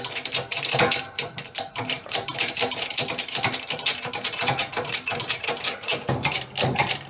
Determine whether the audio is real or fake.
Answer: fake